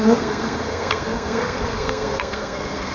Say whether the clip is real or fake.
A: fake